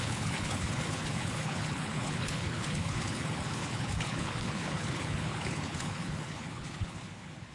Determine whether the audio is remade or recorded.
remade